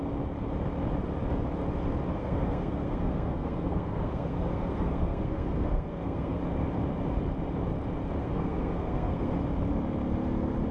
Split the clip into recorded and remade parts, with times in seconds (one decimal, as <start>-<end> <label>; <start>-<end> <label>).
0.0-2.1 recorded; 2.1-6.4 remade; 6.4-8.2 recorded; 8.2-9.3 remade; 9.3-10.7 recorded